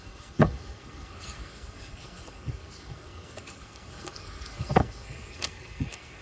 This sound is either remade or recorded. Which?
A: remade